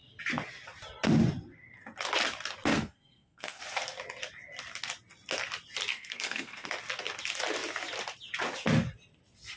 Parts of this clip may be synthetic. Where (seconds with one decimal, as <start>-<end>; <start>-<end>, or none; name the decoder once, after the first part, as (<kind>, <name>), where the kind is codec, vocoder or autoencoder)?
2.7-3.6 (codec, SNAC); 5.9-6.7